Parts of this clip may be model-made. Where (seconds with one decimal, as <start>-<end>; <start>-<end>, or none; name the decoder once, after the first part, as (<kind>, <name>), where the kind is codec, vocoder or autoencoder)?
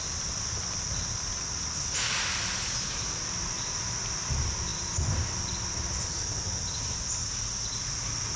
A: none